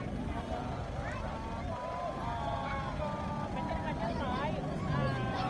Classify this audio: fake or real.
real